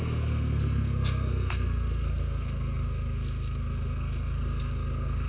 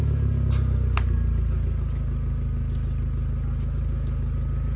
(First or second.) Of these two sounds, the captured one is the second